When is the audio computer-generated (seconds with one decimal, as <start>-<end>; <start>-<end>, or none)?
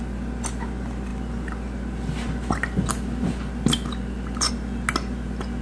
none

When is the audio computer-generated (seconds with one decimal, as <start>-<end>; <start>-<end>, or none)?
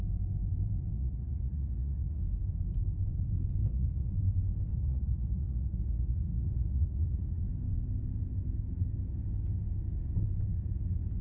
0.9-2.2; 3.6-4.1; 4.7-7.4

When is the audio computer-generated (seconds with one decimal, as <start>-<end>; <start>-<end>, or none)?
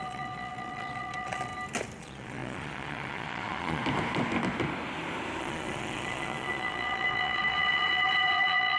0.0-1.5; 2.0-3.8; 5.4-8.8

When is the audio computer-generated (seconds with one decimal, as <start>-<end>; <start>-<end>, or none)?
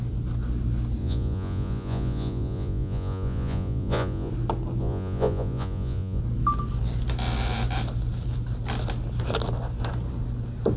1.0-4.3; 4.8-6.2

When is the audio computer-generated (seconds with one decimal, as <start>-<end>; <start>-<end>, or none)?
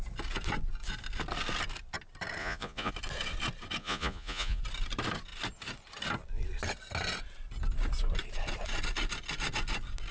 2.4-2.9; 3.8-4.6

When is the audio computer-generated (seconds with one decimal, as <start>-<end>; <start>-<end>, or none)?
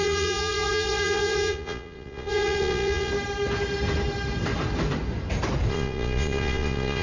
0.0-3.1; 5.7-7.0